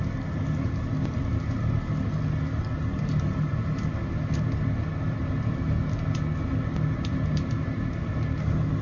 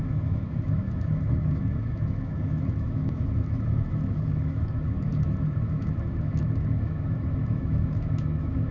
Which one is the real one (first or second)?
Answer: first